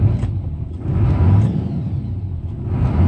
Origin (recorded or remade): recorded